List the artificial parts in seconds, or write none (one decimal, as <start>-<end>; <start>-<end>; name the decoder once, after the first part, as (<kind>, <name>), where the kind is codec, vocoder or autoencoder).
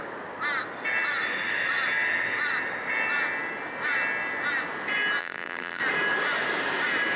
5.2-5.8 (vocoder, BigVGAN v2)